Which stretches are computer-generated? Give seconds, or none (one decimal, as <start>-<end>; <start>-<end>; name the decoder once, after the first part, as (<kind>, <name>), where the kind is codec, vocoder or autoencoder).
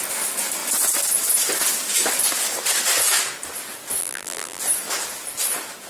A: 4.0-4.6 (vocoder, BigVGAN v2)